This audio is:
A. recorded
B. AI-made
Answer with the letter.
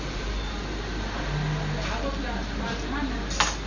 A